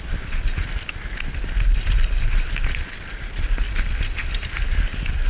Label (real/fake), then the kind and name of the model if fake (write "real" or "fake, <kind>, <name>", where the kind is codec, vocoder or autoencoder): real